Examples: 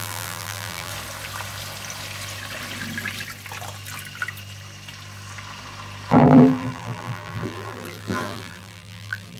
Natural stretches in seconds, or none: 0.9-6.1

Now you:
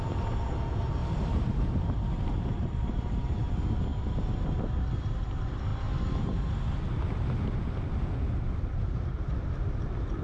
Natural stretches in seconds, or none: 0.0-1.0; 3.5-10.2